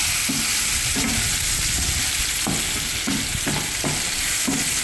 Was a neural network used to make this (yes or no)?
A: no